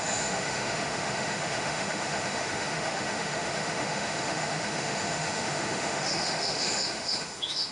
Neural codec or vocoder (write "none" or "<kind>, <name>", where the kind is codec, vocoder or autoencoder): autoencoder, DAC-VAE